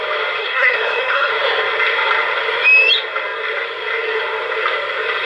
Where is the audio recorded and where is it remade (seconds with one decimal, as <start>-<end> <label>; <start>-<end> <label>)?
0.0-0.4 recorded; 0.4-1.3 remade; 1.3-5.2 recorded